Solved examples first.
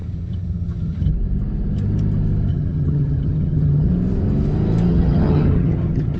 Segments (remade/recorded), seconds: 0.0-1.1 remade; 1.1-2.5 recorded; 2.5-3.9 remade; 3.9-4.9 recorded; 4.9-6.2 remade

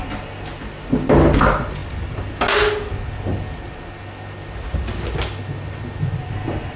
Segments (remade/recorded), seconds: 0.0-6.8 recorded

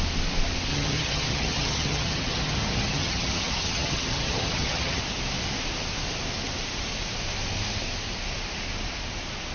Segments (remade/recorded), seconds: 0.0-0.7 recorded; 0.7-5.0 remade; 5.0-9.5 recorded

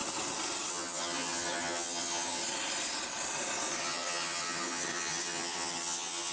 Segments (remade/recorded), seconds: 0.0-0.7 recorded; 0.7-2.4 remade; 2.4-3.8 recorded; 3.8-6.3 remade

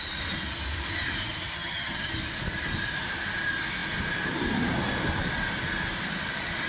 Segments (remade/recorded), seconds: 0.0-1.5 recorded; 1.5-2.1 remade; 2.1-6.7 recorded